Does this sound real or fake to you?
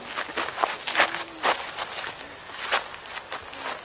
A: real